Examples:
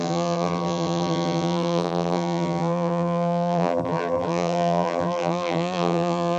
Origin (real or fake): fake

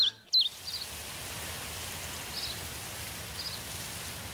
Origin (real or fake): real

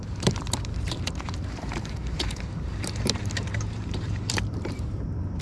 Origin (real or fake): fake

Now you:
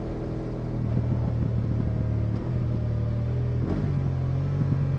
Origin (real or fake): real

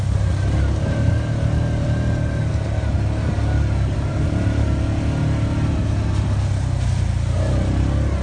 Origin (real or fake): real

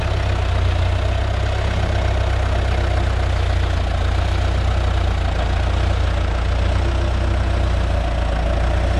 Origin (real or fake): real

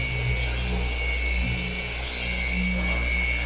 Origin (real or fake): real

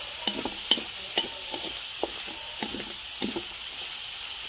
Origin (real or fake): real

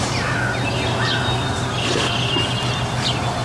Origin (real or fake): real